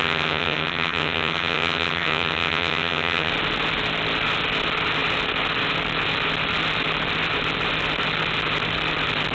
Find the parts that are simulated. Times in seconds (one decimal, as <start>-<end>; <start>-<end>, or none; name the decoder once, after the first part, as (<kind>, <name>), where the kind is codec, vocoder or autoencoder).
0.0-3.3 (vocoder, HiFi-GAN)